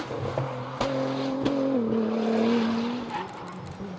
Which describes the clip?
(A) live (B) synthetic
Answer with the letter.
A